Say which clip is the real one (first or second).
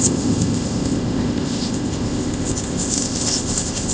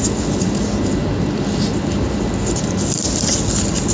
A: second